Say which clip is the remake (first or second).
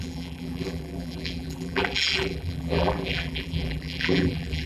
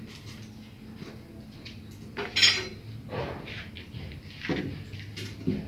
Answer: first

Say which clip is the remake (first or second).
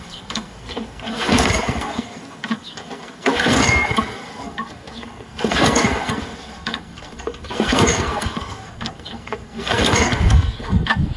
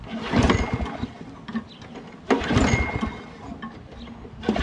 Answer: first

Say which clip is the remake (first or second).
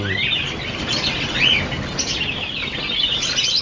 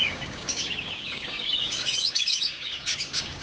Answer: second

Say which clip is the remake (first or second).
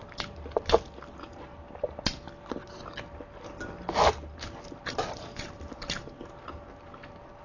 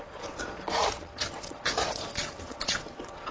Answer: second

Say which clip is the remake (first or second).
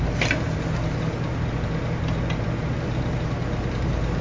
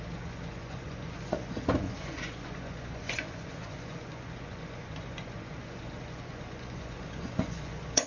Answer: second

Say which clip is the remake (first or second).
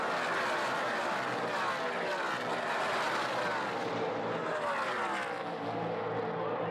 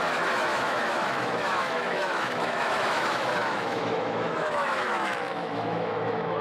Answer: second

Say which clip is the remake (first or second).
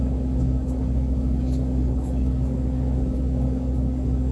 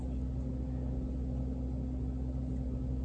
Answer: first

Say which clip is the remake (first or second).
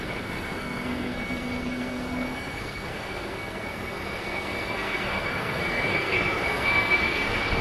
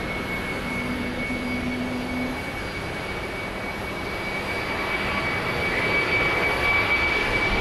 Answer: first